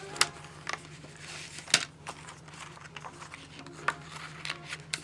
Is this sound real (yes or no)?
yes